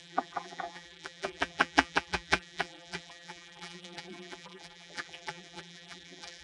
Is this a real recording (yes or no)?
no